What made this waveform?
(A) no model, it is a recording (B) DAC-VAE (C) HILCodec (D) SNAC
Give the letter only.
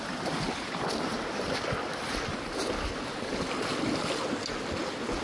A